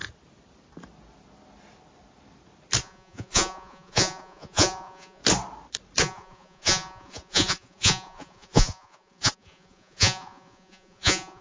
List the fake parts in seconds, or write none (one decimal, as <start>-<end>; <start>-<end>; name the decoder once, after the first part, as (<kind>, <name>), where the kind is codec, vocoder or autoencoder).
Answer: 2.8-5.2 (vocoder, Vocos); 6.0-11.4